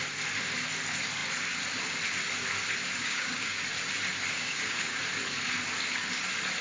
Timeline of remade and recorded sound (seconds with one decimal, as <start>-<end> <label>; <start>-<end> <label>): 0.0-3.0 recorded; 3.0-3.6 remade; 3.6-4.3 recorded; 4.3-5.0 remade; 5.0-6.6 recorded

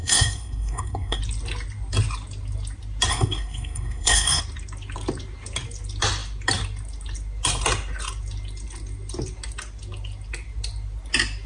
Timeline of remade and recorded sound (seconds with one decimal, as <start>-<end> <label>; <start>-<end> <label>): 0.0-1.2 remade; 1.2-3.1 recorded; 3.1-4.4 remade; 4.4-11.5 recorded

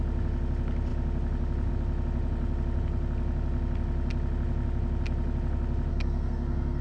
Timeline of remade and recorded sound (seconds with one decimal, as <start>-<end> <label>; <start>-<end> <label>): 0.0-5.9 recorded; 5.9-6.8 remade

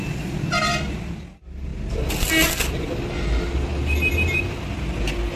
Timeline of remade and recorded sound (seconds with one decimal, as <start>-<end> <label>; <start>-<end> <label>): 0.0-5.4 recorded

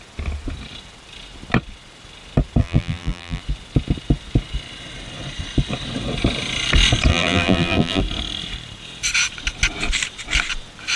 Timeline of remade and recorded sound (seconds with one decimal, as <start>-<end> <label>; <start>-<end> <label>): 0.0-2.6 recorded; 2.6-3.4 remade; 3.4-7.1 recorded; 7.1-8.0 remade; 8.0-11.0 recorded

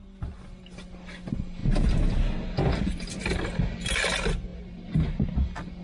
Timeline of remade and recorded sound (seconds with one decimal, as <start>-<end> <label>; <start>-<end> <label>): 0.0-5.8 recorded

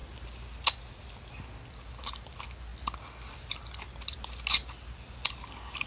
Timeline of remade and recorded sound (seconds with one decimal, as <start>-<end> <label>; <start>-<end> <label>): 0.0-5.9 recorded